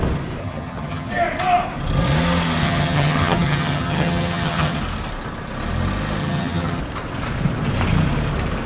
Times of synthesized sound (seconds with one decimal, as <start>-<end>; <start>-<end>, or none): 0.4-1.1; 2.6-4.8; 6.2-6.8